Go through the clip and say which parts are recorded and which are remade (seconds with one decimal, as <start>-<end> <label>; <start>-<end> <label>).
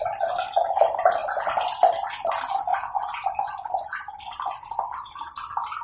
0.0-5.8 recorded